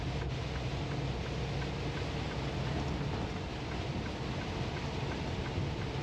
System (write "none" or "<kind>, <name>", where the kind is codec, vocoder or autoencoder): none